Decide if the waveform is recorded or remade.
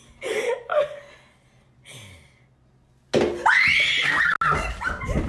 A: recorded